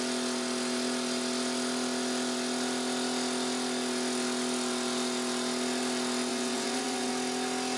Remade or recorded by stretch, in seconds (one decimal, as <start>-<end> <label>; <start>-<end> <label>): 0.0-6.3 recorded; 6.3-7.1 remade; 7.1-7.8 recorded